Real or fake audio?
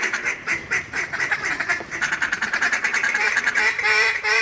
fake